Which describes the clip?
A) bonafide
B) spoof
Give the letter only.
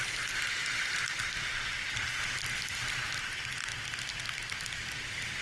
A